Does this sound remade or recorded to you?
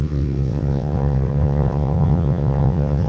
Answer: remade